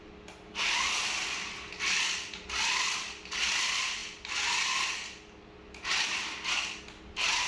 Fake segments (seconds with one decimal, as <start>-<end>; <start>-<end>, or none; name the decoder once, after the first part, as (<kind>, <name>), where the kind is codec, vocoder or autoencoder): none